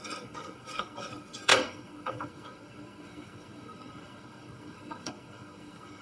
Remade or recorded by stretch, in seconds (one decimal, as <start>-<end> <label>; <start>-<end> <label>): 0.0-6.0 remade